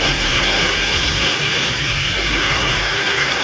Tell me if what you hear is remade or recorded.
remade